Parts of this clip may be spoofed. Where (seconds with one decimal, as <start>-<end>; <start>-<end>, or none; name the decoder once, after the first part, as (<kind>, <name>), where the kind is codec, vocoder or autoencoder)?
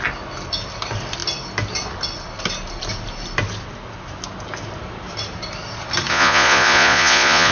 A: 6.1-7.5 (vocoder, Vocos)